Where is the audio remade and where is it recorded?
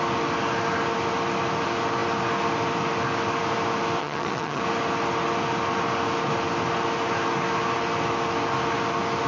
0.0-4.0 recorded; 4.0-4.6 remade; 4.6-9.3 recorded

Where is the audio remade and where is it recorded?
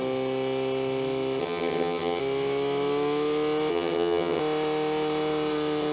0.0-1.4 recorded; 1.4-2.2 remade; 2.2-3.7 recorded; 3.7-4.4 remade; 4.4-5.9 recorded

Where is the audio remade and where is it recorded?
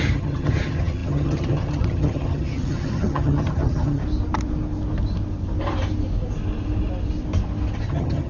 0.0-4.0 remade; 4.0-7.9 recorded; 7.9-8.3 remade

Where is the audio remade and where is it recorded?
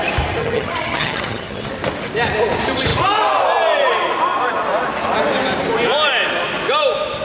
0.0-0.4 recorded; 0.4-1.7 remade; 1.7-7.2 recorded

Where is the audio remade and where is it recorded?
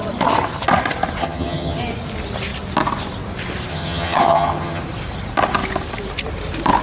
0.0-1.2 recorded; 1.2-1.8 remade; 1.8-3.7 recorded; 3.7-4.8 remade; 4.8-6.8 recorded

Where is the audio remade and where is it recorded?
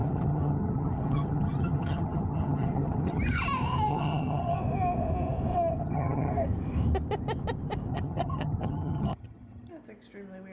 0.0-3.2 remade; 3.2-3.9 recorded; 3.9-4.6 remade; 4.6-5.8 recorded; 5.8-6.3 remade; 6.3-7.9 recorded; 7.9-9.7 remade; 9.7-10.5 recorded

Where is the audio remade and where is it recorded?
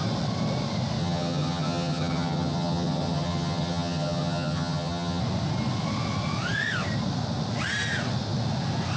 0.0-1.0 recorded; 1.0-5.2 remade; 5.2-9.0 recorded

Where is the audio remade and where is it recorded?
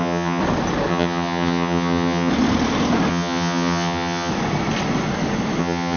0.0-0.4 remade; 0.4-0.9 recorded; 0.9-2.3 remade; 2.3-3.1 recorded; 3.1-4.3 remade; 4.3-5.6 recorded; 5.6-6.0 remade